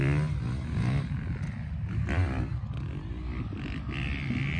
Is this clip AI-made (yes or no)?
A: no